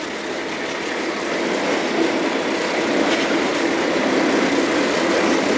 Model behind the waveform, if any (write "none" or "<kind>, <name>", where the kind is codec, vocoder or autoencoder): none